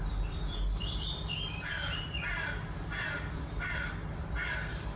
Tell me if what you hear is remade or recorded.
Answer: remade